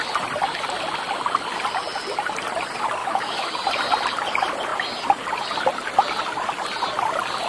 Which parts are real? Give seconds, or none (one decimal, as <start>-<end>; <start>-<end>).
0.0-3.0; 3.5-7.5